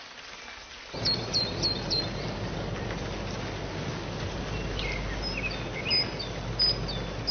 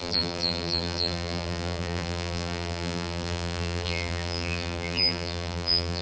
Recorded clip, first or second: first